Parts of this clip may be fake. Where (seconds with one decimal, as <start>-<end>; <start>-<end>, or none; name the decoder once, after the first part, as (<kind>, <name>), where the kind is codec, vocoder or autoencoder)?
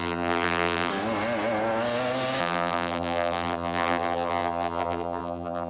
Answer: 0.0-0.9 (vocoder, BigVGAN v2); 2.4-5.7